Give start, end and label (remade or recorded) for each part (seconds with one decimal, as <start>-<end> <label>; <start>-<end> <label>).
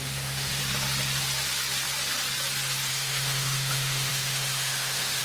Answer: 0.0-0.6 remade; 0.6-2.9 recorded; 2.9-5.2 remade